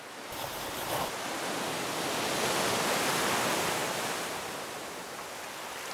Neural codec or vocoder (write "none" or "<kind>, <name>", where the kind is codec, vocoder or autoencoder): none